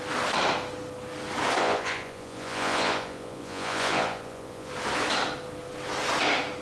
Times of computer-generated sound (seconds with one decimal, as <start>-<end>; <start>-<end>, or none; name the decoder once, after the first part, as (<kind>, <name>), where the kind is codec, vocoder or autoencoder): 1.6-4.7 (vocoder, Vocos)